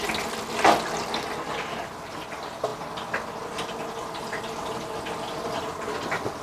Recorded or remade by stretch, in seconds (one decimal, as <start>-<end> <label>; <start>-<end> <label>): 0.0-6.4 recorded